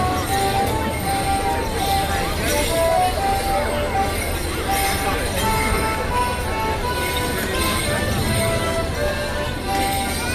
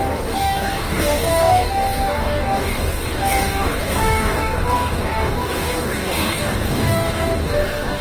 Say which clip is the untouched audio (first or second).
first